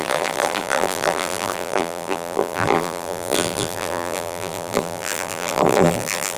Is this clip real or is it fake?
fake